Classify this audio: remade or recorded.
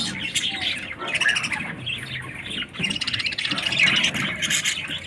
recorded